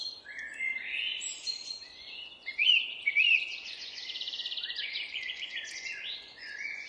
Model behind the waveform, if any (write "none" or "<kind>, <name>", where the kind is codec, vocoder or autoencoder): vocoder, Vocos